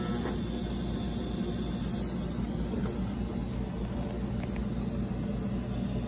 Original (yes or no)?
yes